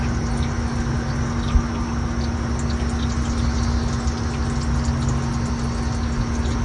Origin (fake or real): real